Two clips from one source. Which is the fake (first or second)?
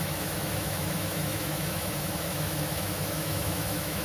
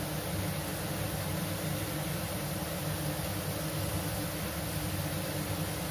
first